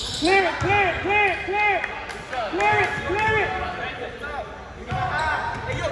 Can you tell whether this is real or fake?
real